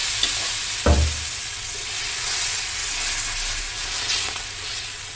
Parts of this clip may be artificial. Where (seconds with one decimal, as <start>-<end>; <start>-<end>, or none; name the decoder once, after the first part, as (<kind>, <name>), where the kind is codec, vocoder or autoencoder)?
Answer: 1.4-2.8 (vocoder, WaveNeXt); 4.0-5.2